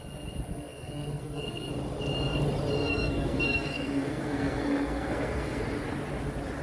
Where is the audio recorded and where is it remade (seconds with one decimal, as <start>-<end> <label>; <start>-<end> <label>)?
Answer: 0.0-0.5 recorded; 0.5-1.7 remade; 1.7-2.8 recorded; 2.8-5.6 remade; 5.6-6.6 recorded

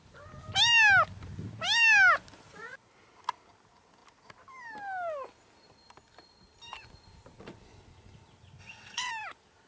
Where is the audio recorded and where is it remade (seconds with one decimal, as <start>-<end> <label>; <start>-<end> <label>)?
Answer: 0.0-8.6 recorded; 8.6-9.1 remade; 9.1-9.7 recorded